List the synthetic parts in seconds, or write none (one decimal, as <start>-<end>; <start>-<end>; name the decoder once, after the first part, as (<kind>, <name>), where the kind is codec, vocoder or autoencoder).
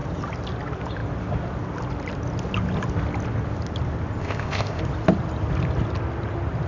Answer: 4.2-4.8 (codec, ZipCodec)